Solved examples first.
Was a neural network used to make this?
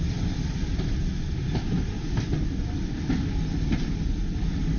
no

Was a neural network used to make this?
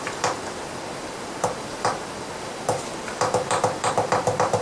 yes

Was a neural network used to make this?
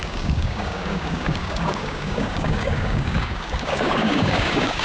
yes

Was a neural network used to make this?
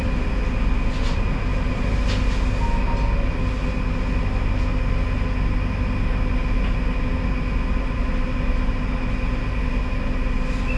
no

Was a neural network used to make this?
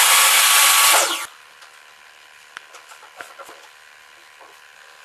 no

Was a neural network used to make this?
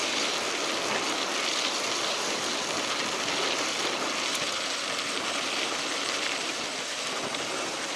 no